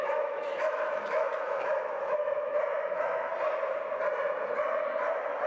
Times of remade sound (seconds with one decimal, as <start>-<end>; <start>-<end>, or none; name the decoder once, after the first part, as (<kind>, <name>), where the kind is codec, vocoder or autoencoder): 0.0-3.3 (autoencoder, DAC-VAE)